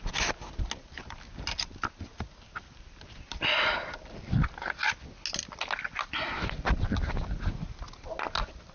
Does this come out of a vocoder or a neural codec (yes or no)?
no